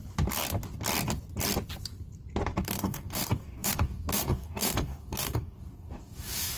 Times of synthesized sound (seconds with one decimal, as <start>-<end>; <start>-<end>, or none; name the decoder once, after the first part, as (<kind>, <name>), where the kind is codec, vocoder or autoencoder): 2.6-6.6 (codec, DAC)